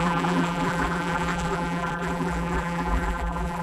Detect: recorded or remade remade